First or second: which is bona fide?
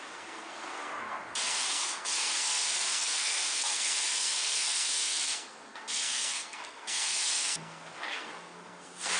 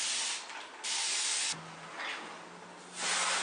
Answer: second